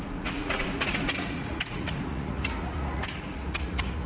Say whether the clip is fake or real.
fake